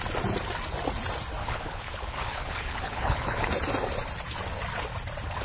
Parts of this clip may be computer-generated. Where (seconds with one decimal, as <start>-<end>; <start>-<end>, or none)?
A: 1.4-3.5